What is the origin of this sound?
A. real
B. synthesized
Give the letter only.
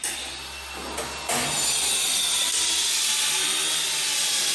A